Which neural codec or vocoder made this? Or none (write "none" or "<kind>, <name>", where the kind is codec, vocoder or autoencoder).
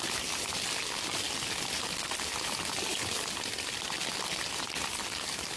none